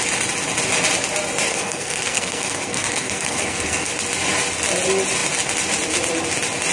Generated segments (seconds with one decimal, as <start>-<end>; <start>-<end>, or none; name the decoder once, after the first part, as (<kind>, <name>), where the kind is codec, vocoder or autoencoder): 1.5-3.9 (codec, SNAC)